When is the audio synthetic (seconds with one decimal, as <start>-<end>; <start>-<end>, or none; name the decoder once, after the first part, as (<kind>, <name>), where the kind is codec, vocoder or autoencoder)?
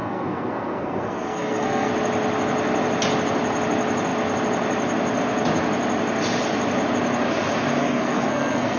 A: 0.0-1.9 (codec, SNAC); 7.8-8.8